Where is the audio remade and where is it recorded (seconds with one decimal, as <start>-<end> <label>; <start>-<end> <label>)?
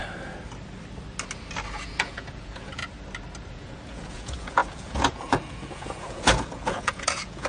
0.0-1.7 recorded; 1.7-2.8 remade; 2.8-3.5 recorded; 3.5-7.5 remade